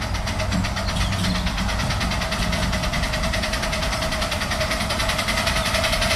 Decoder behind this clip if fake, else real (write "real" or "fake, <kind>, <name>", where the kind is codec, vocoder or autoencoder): fake, vocoder, BigVGAN v2